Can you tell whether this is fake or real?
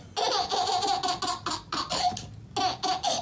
real